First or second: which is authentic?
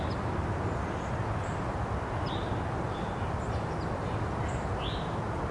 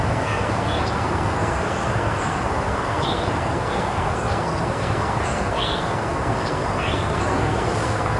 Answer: first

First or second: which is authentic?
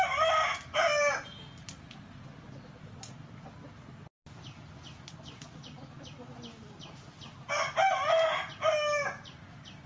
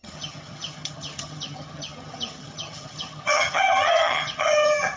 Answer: first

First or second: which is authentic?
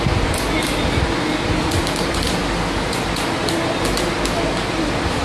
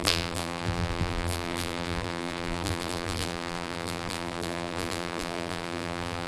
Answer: first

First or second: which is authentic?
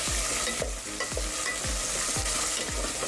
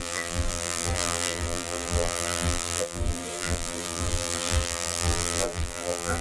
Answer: first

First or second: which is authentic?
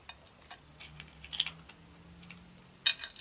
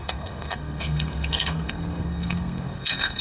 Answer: first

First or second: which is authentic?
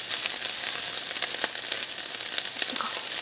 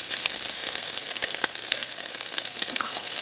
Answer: first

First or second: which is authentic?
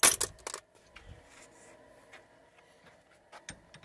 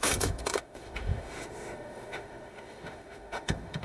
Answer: first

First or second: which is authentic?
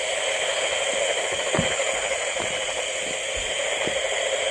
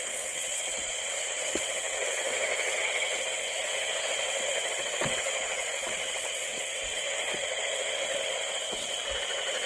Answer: first